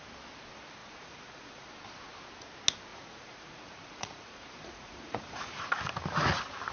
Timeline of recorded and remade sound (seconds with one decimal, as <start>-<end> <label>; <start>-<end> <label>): 0.0-0.8 recorded; 0.8-1.7 remade; 1.7-2.9 recorded; 2.9-5.7 remade; 5.7-6.7 recorded